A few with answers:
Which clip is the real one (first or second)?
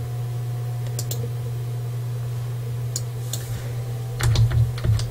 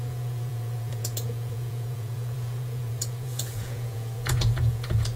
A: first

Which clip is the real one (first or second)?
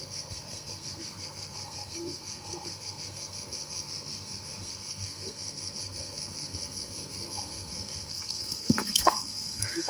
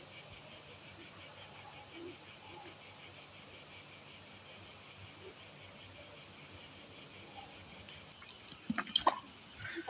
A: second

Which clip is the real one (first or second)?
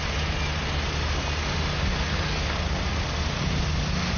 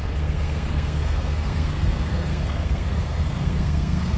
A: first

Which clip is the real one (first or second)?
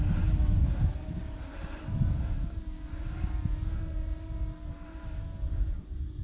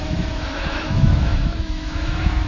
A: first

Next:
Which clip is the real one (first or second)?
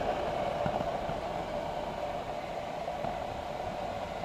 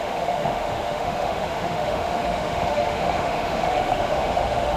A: first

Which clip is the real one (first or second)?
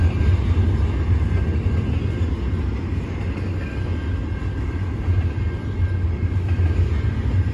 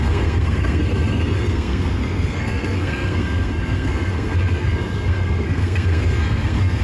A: first